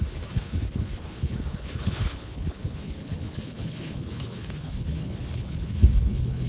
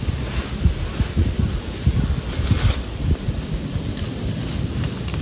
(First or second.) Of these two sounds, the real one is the second